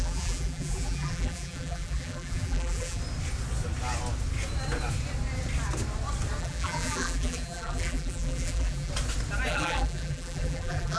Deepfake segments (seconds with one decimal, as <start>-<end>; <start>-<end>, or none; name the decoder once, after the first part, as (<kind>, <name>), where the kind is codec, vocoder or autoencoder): 0.0-3.0 (vocoder, BigVGAN v2); 6.4-8.9; 9.5-11.0